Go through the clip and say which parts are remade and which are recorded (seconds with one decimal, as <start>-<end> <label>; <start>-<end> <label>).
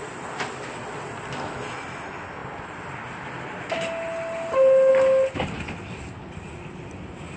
0.0-7.4 recorded